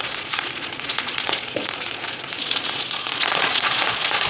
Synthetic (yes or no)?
yes